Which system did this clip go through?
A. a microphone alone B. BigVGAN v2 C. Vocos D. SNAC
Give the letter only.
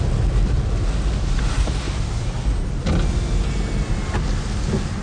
A